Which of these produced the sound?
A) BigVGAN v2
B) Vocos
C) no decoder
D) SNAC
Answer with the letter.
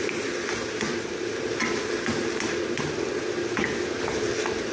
C